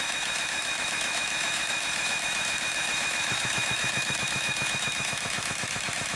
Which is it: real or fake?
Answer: fake